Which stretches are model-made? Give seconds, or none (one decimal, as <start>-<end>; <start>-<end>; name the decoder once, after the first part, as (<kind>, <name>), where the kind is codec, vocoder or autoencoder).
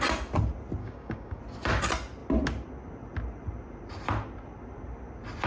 0.8-1.4 (codec, DAC)